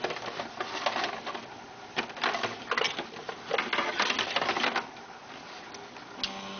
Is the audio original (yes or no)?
yes